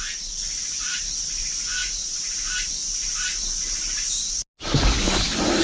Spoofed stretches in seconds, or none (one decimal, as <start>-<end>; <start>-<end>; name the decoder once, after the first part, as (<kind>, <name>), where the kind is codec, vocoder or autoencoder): none